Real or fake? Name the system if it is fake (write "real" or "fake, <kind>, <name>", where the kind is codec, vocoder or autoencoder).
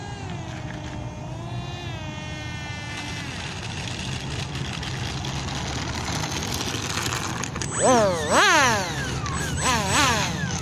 real